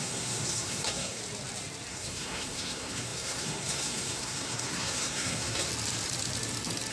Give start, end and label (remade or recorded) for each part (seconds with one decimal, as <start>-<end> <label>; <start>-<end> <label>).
0.0-1.2 remade; 1.2-1.9 recorded; 1.9-5.7 remade; 5.7-6.9 recorded